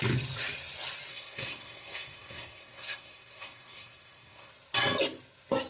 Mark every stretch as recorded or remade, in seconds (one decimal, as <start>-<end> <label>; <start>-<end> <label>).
0.0-1.1 recorded; 1.1-4.5 remade; 4.5-5.7 recorded